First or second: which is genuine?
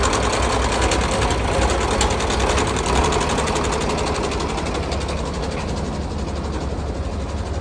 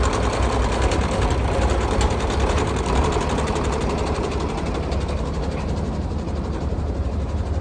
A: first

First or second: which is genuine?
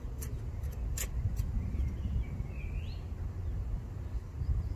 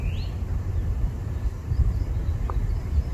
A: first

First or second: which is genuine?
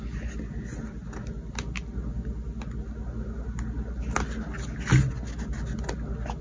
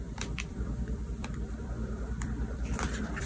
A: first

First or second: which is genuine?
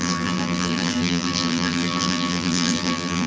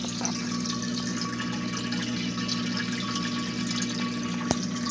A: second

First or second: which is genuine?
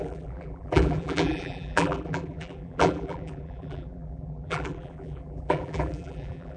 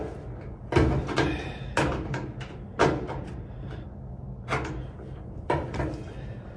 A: second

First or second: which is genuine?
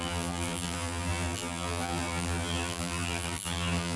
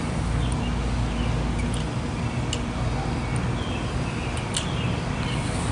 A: second